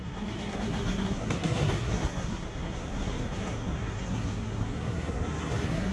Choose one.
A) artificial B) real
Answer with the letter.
A